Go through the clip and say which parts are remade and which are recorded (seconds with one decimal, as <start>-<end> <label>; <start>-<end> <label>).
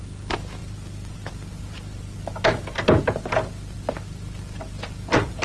0.0-5.4 recorded